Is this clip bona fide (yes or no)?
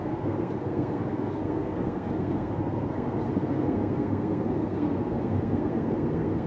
no